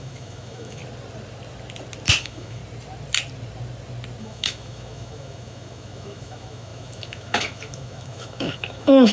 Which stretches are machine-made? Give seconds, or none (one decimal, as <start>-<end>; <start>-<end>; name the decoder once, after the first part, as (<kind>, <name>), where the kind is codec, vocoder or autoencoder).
0.0-0.8 (autoencoder, DAC-VAE); 2.2-2.6; 4.2-9.1